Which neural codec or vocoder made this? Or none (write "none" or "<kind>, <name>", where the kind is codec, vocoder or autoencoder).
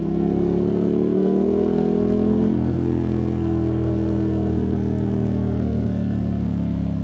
codec, SNAC